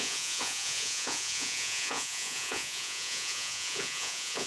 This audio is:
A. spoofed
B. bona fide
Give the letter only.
A